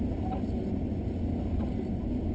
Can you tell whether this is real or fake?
real